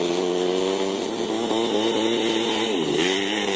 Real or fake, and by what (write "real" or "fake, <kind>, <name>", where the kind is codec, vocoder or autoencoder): real